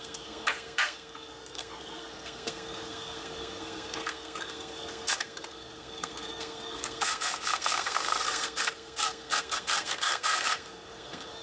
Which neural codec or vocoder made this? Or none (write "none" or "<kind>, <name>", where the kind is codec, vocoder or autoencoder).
codec, SNAC